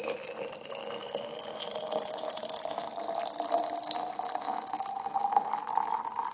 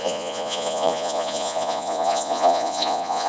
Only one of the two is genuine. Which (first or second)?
first